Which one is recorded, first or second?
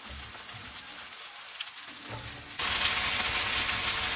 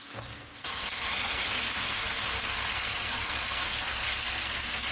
first